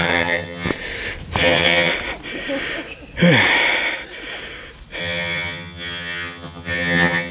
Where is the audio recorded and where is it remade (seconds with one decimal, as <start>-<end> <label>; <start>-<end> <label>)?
0.0-0.7 remade; 0.7-1.4 recorded; 1.4-1.9 remade; 1.9-5.0 recorded; 5.0-7.3 remade